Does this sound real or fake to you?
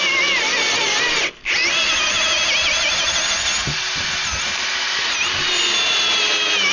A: real